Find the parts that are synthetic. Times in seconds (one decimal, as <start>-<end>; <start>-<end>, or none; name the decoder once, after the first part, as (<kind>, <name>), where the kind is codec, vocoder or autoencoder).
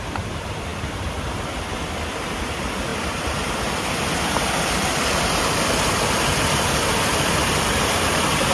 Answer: none